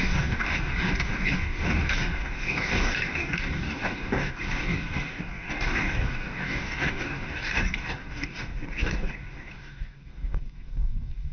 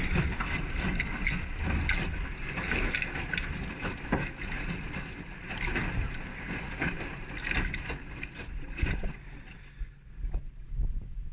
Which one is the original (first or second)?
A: second